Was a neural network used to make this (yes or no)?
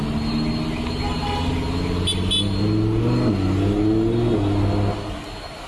no